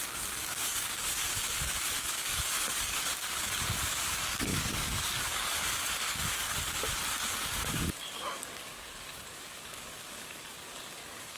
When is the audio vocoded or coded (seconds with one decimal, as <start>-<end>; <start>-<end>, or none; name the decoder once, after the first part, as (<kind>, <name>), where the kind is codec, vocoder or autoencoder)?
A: 0.0-6.5 (codec, DAC); 7.3-11.4